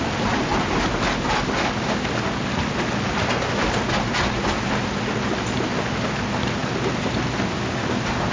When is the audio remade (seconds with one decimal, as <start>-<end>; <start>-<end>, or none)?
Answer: none

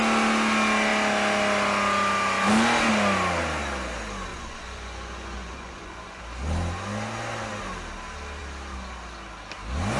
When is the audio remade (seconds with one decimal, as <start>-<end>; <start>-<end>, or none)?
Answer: 4.3-6.2

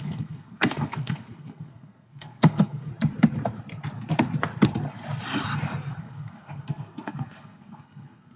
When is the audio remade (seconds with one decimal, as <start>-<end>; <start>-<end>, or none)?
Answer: 0.0-2.9; 6.0-8.4